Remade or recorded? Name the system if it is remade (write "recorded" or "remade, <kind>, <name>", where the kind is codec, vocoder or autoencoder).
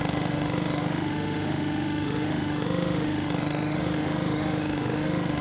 remade, autoencoder, DAC-VAE